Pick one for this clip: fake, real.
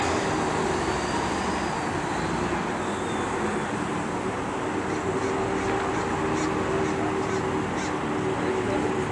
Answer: real